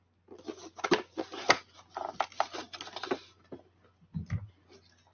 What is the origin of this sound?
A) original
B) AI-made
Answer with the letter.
A